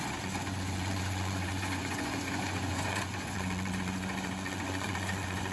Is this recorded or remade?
remade